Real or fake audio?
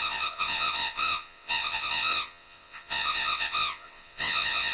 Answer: fake